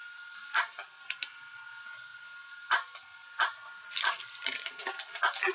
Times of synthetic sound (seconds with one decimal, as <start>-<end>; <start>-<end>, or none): none